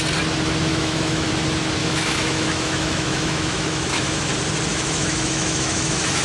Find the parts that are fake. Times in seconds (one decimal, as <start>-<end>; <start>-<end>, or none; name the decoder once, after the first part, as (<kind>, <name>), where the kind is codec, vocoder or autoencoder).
0.7-1.3 (autoencoder, DAC-VAE); 1.8-4.3; 4.7-6.2